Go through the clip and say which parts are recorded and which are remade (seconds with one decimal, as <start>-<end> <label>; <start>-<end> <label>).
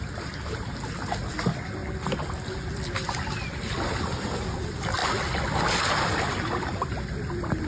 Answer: 0.0-7.7 recorded